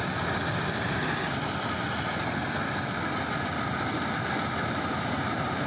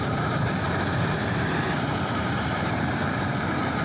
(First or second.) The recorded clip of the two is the first